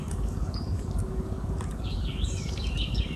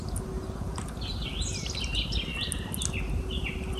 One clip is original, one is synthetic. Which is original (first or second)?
second